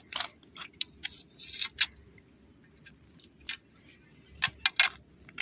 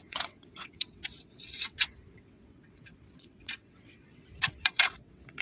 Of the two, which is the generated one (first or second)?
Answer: second